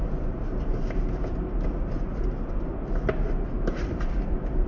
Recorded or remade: remade